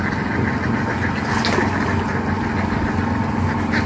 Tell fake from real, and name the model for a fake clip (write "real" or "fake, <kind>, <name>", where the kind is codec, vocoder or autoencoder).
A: real